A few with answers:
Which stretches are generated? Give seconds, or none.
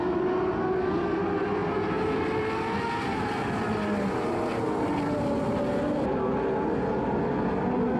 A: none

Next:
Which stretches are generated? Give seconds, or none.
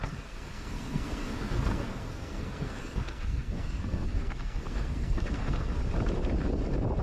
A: 0.0-5.8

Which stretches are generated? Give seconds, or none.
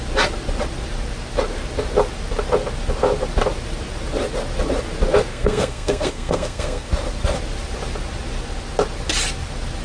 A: 5.3-6.9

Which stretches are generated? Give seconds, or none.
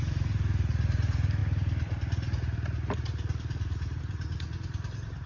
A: none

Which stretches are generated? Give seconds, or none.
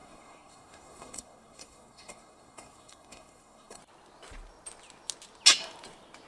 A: 0.0-3.8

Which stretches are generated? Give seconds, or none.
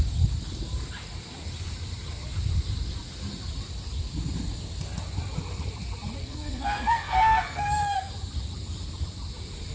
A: 6.2-8.1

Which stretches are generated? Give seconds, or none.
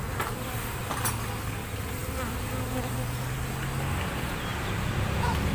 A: none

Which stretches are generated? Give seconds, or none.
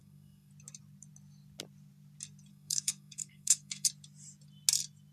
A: 0.0-0.5; 2.5-3.9